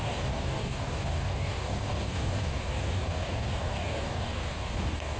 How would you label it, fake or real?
fake